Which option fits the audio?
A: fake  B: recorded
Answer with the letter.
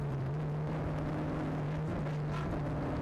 B